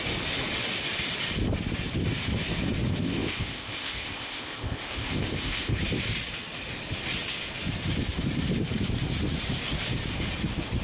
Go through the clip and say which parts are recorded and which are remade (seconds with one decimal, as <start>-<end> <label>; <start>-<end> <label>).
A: 0.0-2.9 recorded; 2.9-5.8 remade; 5.8-10.8 recorded